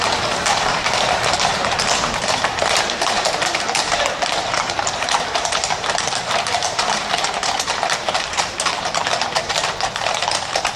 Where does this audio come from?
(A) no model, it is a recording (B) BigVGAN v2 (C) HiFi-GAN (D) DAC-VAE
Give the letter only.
B